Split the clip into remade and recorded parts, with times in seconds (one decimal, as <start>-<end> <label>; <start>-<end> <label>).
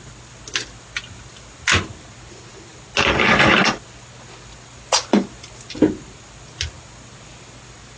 0.0-8.0 recorded